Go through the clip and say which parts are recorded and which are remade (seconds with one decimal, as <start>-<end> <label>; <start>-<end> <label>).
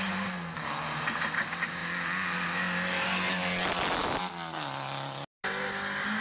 0.0-6.2 recorded